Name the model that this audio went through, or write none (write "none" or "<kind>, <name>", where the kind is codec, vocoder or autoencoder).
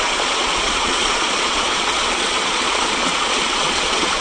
vocoder, Vocos